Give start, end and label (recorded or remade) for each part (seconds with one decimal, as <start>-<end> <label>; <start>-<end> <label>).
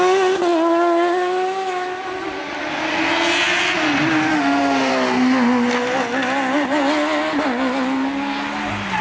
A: 0.0-4.3 recorded; 4.3-4.9 remade; 4.9-9.0 recorded